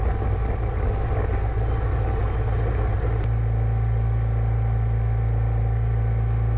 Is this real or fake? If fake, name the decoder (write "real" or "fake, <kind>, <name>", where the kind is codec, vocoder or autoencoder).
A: real